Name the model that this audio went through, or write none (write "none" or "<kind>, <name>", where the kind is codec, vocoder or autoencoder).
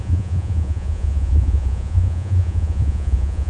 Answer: vocoder, Vocos